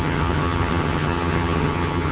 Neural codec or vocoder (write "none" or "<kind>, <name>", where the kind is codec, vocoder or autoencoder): vocoder, HiFi-GAN